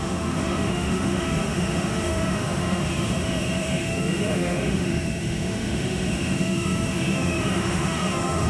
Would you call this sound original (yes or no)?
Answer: no